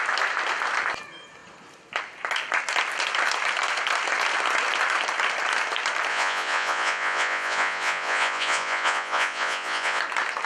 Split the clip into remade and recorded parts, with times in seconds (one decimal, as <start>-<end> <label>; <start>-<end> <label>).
0.0-6.1 recorded; 6.1-10.0 remade; 10.0-10.5 recorded